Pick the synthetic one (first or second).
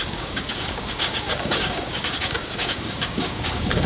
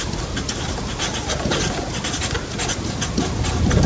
first